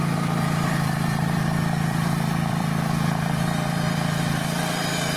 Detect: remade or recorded remade